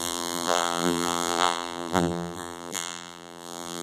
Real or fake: fake